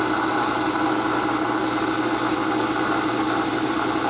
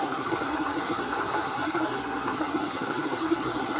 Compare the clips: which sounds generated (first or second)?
second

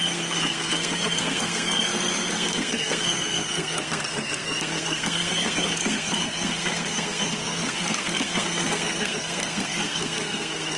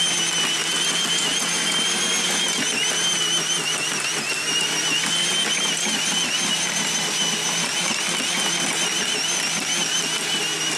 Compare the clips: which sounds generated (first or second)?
first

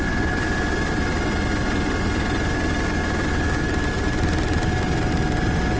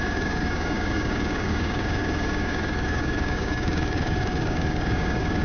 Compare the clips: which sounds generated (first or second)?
second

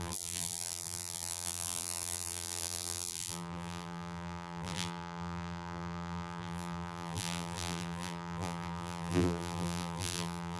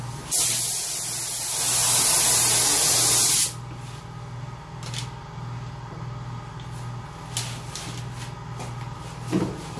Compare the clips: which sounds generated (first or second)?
first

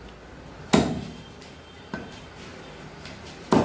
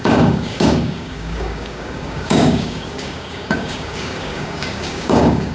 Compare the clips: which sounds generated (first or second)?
second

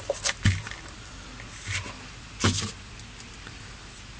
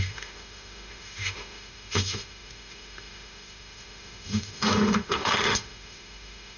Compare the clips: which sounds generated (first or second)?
second